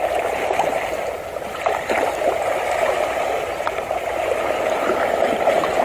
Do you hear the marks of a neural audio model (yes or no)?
no